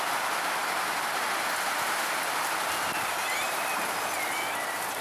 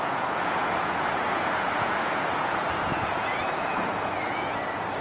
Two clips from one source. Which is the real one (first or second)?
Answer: first